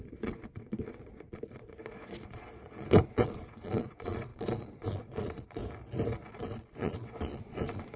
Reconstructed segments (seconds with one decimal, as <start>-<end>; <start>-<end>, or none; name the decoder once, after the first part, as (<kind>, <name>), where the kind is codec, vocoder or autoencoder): 0.0-5.6 (vocoder, Vocos); 6.3-8.0